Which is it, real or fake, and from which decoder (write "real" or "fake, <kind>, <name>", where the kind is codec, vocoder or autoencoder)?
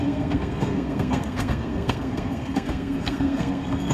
fake, codec, SNAC